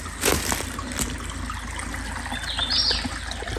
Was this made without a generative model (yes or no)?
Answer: yes